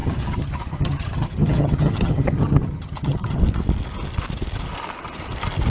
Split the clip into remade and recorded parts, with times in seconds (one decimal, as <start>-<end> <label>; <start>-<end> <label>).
0.0-3.4 remade; 3.4-5.7 recorded